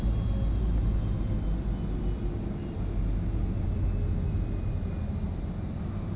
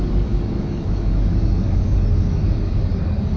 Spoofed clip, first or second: second